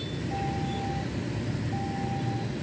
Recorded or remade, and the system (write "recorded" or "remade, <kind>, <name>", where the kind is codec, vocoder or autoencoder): recorded